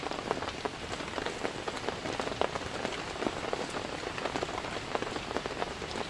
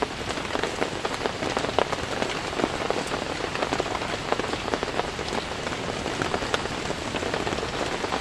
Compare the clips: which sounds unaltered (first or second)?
second